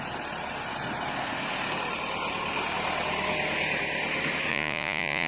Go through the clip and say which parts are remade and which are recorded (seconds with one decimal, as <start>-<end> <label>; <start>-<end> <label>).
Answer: 0.0-4.5 recorded; 4.5-5.3 remade